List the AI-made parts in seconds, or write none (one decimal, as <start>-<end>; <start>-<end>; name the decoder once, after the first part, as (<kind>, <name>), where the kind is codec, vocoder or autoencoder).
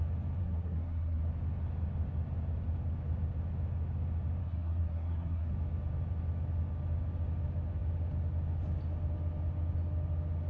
0.4-1.2 (codec, SNAC); 4.4-5.5